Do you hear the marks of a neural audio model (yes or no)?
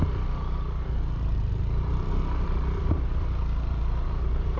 no